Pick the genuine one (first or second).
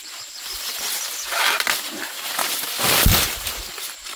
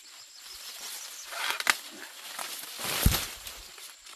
second